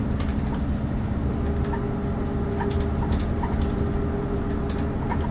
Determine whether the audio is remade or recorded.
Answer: recorded